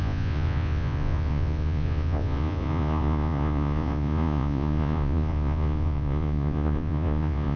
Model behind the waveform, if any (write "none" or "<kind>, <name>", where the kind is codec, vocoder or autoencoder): vocoder, Vocos